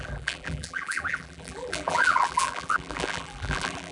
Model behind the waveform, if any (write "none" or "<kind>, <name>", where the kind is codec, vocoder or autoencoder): vocoder, BigVGAN v2